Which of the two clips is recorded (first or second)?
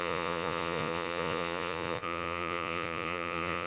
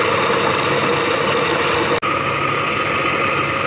second